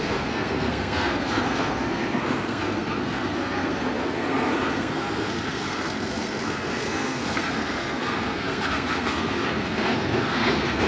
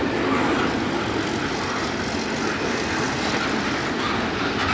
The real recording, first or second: second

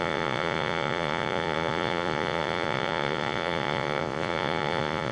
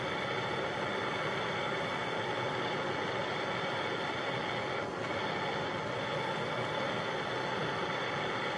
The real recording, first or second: second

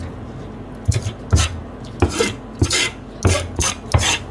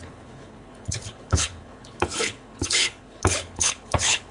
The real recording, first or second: first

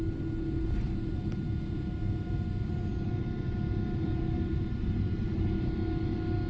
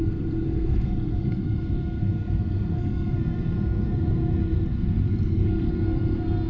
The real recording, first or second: first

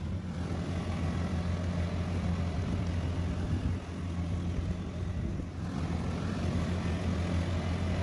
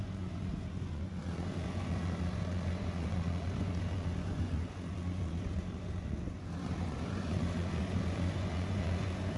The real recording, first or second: first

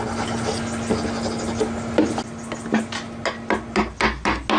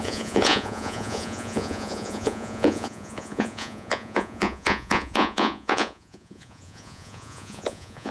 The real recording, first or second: first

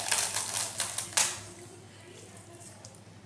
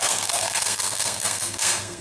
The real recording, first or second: first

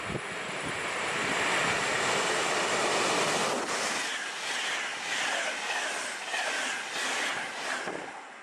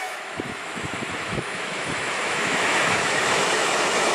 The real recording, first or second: first